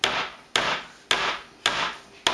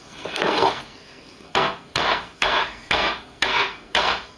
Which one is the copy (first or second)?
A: second